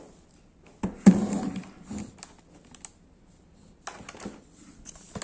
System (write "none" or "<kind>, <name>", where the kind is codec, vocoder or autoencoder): none